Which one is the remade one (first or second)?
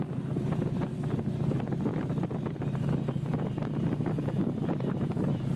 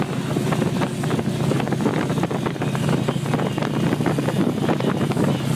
first